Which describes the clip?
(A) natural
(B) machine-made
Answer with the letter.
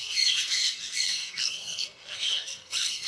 B